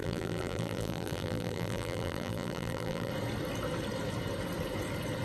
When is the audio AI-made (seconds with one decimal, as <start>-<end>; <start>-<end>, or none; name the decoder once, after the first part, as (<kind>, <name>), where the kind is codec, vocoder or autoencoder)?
0.0-3.1 (vocoder, BigVGAN v2)